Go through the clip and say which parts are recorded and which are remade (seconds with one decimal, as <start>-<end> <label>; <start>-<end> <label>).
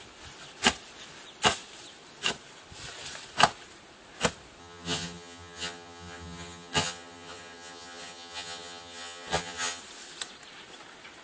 0.0-4.6 recorded; 4.6-9.8 remade; 9.8-11.2 recorded